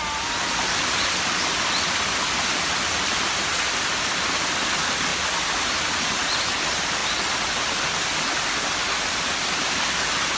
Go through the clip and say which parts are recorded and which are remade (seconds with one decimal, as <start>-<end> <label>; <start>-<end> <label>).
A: 0.0-3.5 recorded; 3.5-4.1 remade; 4.1-5.1 recorded; 5.1-6.0 remade; 6.0-10.4 recorded